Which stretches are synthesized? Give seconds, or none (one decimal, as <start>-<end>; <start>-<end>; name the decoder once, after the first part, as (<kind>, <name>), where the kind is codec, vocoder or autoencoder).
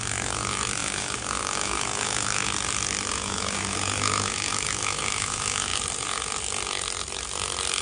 0.0-2.5 (autoencoder, DAC-VAE); 3.1-5.7